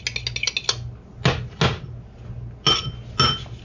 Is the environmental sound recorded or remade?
recorded